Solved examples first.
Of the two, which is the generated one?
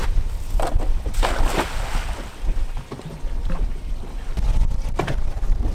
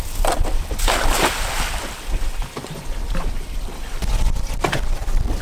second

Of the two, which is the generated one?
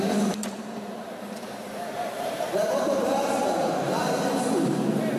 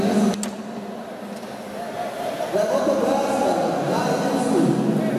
first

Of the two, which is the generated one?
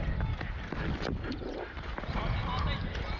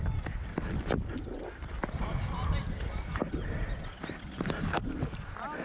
second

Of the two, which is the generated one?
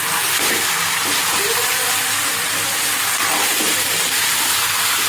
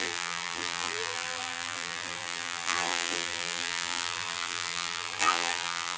second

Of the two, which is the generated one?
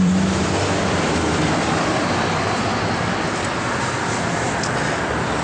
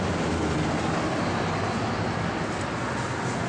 first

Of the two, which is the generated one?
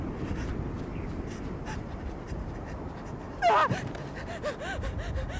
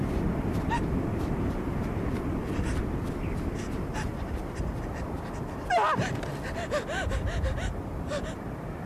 second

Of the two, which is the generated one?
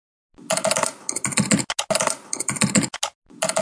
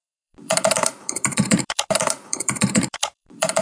second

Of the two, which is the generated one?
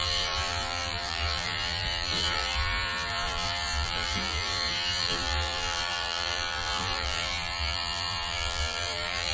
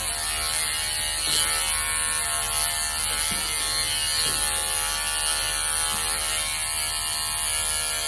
first